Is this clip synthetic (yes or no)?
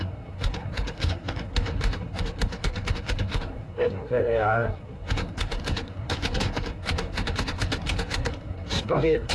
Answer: yes